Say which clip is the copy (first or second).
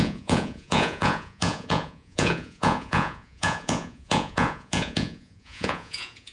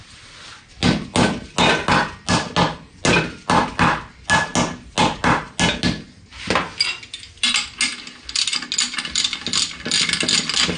first